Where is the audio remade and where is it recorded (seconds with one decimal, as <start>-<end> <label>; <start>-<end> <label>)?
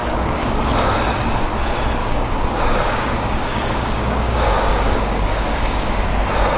0.0-0.7 remade; 0.7-2.0 recorded; 2.0-6.0 remade; 6.0-6.6 recorded